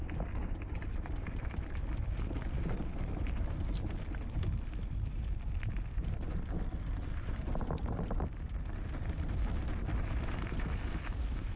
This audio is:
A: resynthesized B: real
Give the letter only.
B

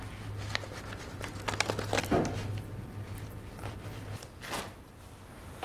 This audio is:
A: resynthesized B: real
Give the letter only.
B